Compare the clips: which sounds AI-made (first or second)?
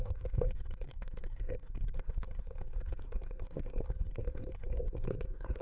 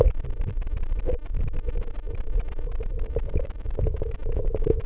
first